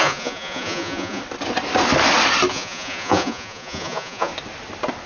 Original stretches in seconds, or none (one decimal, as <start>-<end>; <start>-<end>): 1.2-2.5; 4.3-5.1